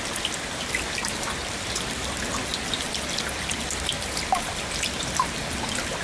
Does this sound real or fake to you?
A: real